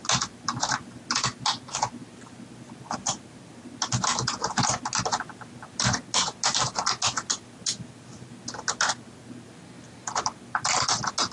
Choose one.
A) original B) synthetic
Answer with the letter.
A